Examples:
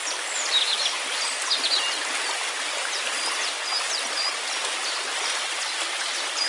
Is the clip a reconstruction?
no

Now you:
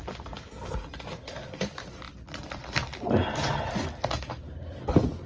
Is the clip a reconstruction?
no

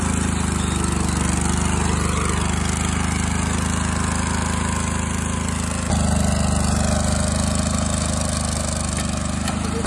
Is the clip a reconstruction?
no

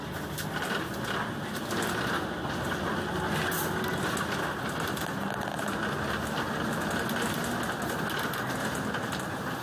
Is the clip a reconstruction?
no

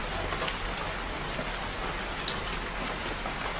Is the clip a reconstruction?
no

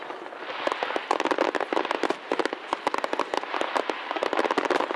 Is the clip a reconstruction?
no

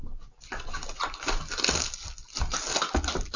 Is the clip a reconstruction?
no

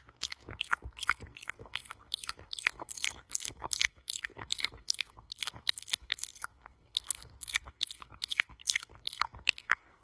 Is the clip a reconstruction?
yes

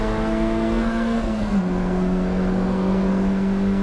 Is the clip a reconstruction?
yes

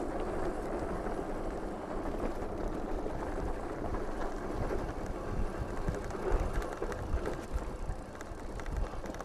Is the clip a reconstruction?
no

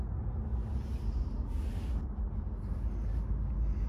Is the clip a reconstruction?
no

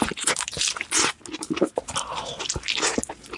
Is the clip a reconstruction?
no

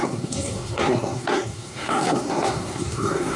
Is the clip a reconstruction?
yes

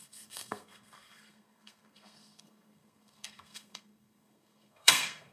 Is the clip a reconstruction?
yes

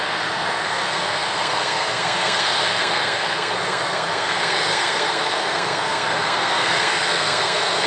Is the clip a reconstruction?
yes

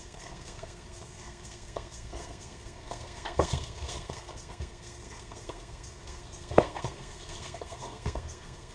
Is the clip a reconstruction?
yes